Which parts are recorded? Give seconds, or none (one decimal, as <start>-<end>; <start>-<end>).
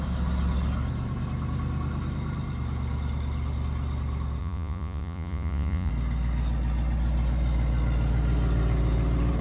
0.0-4.4; 5.9-9.4